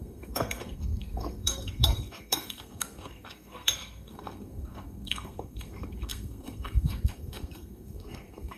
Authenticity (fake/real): fake